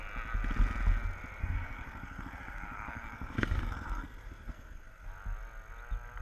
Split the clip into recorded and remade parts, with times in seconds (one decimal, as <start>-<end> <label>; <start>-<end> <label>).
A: 0.0-1.4 recorded; 1.4-5.1 remade; 5.1-6.2 recorded